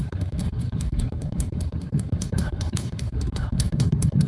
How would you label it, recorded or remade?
remade